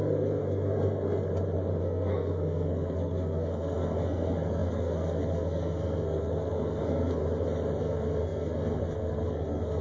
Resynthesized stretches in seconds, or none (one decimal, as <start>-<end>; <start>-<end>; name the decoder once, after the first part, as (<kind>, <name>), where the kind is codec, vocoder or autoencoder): 0.0-1.2 (codec, SNAC); 1.8-7.2; 7.8-9.8